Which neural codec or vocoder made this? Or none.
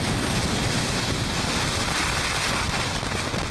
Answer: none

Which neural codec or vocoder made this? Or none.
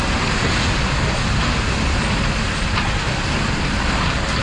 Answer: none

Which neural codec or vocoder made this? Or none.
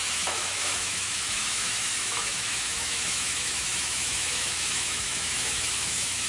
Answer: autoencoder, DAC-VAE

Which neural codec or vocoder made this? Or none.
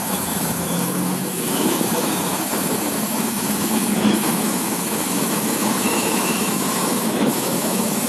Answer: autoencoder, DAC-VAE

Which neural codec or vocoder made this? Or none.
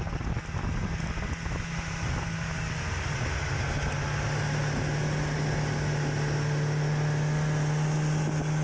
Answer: none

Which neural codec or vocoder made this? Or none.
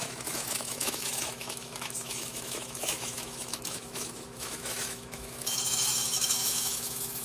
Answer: autoencoder, DAC-VAE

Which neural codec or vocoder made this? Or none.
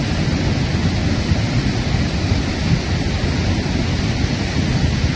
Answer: none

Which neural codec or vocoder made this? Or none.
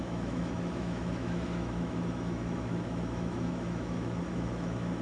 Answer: autoencoder, DAC-VAE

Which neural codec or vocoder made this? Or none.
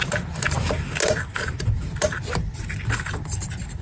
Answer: none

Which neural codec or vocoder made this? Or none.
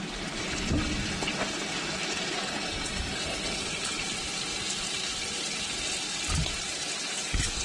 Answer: none